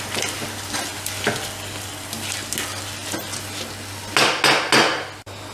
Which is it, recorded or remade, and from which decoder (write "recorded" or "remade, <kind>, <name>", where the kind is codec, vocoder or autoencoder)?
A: recorded